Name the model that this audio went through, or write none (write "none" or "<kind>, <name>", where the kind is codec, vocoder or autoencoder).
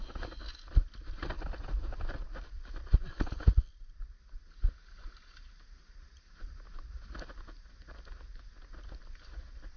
none